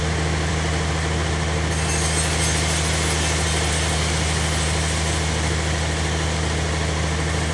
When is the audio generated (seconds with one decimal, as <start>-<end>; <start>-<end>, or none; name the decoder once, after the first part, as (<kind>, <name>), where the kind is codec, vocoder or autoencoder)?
none